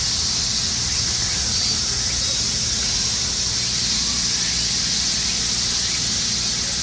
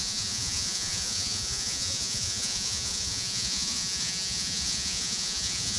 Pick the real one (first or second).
first